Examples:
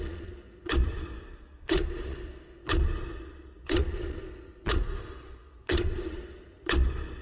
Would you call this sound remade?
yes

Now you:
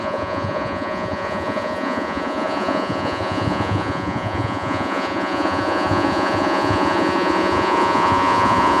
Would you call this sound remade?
yes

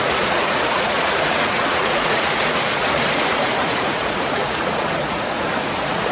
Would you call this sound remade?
yes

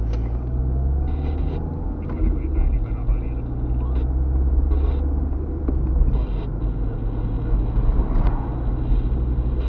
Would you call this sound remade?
no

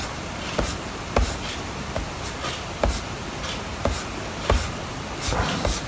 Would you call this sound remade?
no